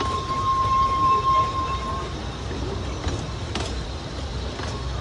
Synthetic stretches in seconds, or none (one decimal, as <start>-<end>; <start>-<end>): 0.0-2.2; 3.4-4.3